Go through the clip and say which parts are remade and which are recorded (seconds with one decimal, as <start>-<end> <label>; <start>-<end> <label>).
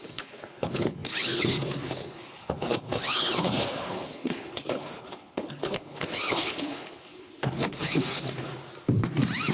0.0-8.5 remade; 8.5-9.5 recorded